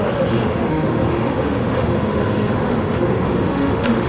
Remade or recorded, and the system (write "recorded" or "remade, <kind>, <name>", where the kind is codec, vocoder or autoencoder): remade, autoencoder, DAC-VAE